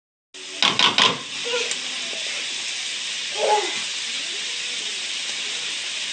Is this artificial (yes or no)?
no